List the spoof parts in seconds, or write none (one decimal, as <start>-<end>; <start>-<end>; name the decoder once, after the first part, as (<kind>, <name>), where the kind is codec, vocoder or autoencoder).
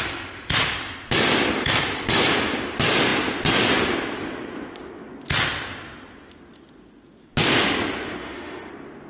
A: 8.2-8.7 (autoencoder, DAC-VAE)